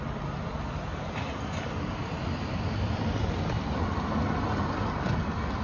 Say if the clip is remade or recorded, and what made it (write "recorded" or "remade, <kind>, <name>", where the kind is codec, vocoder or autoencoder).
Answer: recorded